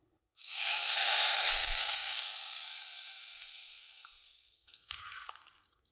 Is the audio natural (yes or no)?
no